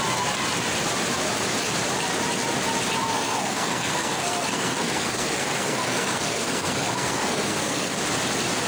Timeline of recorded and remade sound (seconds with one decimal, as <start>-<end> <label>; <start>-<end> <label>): 0.0-3.1 recorded; 3.1-8.0 remade; 8.0-8.7 recorded

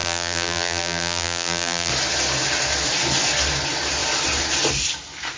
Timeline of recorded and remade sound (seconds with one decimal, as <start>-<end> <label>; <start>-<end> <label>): 0.0-1.9 remade; 1.9-5.4 recorded

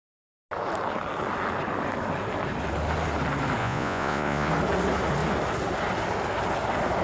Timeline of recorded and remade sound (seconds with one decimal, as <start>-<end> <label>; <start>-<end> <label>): 0.0-3.6 recorded; 3.6-4.5 remade; 4.5-7.0 recorded

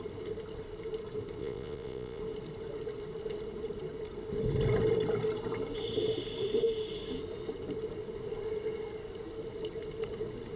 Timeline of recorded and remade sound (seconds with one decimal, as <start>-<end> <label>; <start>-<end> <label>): 0.0-1.4 recorded; 1.4-2.2 remade; 2.2-10.6 recorded

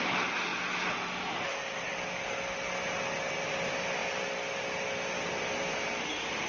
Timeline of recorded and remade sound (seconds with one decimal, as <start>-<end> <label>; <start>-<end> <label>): 0.0-6.5 recorded

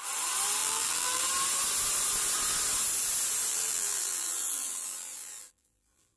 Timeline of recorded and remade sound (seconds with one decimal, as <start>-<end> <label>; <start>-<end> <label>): 0.0-0.6 recorded; 0.6-1.2 remade; 1.2-3.5 recorded; 3.5-6.2 remade

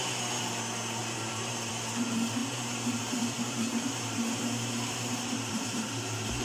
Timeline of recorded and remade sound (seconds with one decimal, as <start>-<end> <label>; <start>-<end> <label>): 0.0-1.0 recorded; 1.0-2.0 remade; 2.0-2.4 recorded; 2.4-6.4 remade